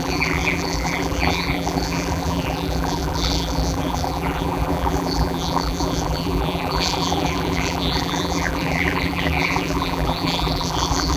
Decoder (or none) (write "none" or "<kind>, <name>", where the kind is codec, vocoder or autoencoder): vocoder, BigVGAN v2